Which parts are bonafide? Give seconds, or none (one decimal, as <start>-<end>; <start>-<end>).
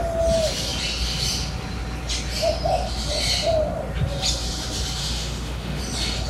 0.0-5.0; 5.8-6.3